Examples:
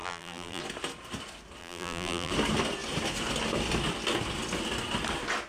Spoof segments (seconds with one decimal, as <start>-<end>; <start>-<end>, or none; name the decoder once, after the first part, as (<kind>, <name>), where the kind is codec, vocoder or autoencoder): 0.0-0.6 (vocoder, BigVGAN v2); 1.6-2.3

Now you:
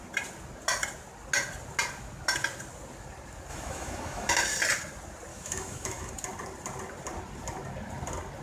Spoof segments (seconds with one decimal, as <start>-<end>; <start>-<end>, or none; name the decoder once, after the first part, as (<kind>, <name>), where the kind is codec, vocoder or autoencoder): 3.5-4.3 (autoencoder, DAC-VAE); 5.3-6.1

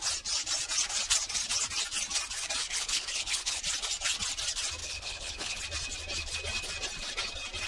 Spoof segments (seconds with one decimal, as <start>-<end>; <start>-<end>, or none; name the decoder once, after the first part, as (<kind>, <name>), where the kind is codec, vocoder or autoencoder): 2.6-3.6 (codec, HILCodec); 4.8-5.6